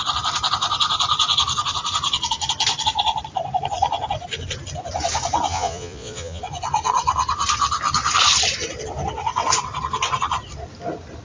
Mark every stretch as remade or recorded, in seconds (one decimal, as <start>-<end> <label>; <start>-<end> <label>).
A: 0.0-5.5 recorded; 5.5-6.4 remade; 6.4-11.2 recorded

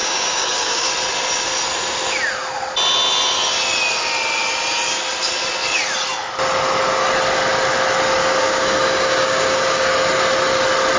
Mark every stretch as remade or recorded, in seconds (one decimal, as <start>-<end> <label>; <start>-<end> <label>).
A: 0.0-0.9 remade; 0.9-8.2 recorded; 8.2-9.9 remade; 9.9-11.0 recorded